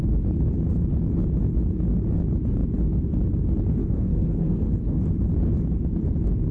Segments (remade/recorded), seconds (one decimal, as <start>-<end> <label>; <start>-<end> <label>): 0.0-3.8 recorded; 3.8-5.0 remade; 5.0-6.5 recorded